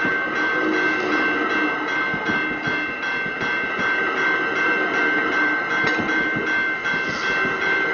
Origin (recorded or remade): recorded